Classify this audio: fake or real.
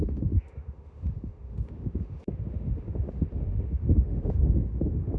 fake